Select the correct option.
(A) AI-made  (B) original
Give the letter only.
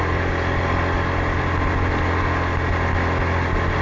B